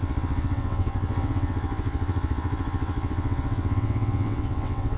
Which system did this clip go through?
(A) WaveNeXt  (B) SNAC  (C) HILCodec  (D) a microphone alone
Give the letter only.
A